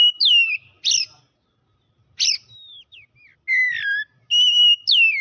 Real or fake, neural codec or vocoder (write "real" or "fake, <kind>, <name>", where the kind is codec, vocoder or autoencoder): real